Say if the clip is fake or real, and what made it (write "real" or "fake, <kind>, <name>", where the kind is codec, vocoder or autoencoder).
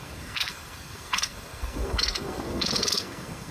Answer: fake, codec, SNAC